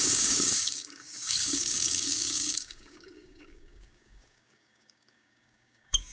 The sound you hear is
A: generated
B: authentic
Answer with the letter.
A